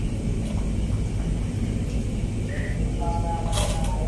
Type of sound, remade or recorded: recorded